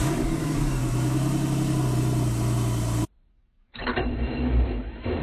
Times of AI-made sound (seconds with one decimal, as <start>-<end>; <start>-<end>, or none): 0.0-0.8; 3.3-3.9